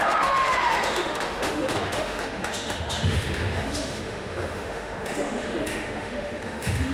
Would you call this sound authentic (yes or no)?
no